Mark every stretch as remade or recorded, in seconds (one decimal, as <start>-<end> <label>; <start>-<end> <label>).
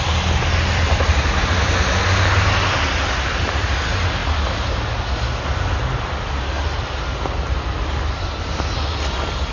0.0-9.5 recorded